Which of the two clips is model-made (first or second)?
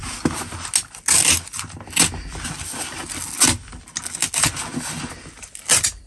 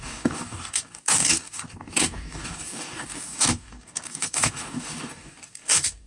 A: second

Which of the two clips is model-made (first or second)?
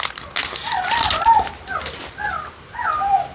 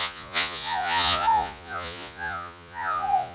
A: second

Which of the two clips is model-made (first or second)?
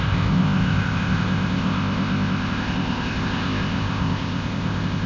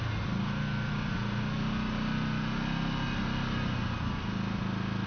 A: first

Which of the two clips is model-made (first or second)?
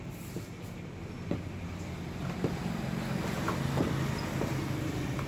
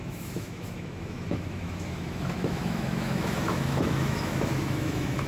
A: second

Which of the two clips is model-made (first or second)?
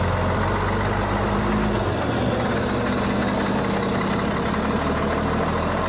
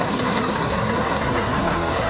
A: second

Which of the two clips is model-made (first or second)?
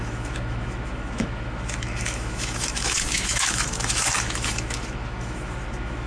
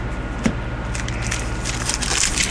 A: first